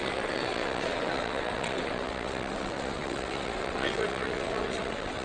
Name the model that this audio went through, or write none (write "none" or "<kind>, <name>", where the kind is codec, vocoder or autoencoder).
vocoder, WaveNeXt